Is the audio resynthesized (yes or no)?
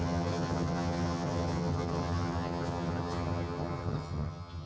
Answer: yes